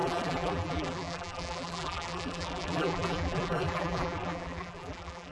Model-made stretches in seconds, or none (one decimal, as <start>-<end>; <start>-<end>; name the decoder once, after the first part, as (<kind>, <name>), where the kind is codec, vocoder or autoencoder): 0.0-5.3 (vocoder, BigVGAN v2)